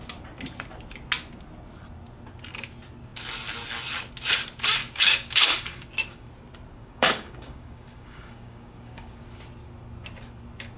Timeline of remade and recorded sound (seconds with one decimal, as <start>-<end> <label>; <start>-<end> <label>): 0.0-4.8 recorded; 4.8-6.3 remade; 6.3-6.8 recorded; 6.8-9.2 remade; 9.2-10.8 recorded